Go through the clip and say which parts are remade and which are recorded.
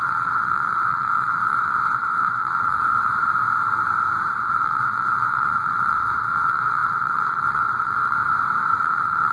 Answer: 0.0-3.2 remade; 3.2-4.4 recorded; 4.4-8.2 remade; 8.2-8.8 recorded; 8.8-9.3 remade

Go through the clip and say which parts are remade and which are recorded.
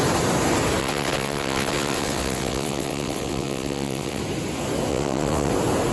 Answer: 0.0-0.8 recorded; 0.8-4.2 remade; 4.2-4.9 recorded; 4.9-5.5 remade; 5.5-5.9 recorded